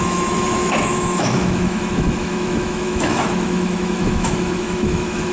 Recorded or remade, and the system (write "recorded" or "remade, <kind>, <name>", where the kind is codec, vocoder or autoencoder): remade, autoencoder, DAC-VAE